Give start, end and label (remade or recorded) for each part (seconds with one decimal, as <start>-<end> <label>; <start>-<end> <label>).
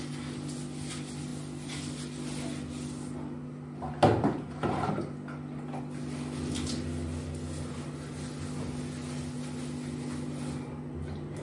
0.0-11.4 recorded